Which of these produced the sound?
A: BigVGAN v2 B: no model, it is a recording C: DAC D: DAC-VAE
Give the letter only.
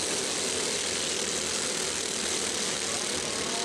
B